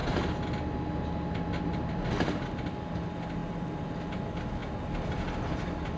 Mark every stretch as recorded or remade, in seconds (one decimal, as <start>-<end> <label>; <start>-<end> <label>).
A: 0.0-6.0 recorded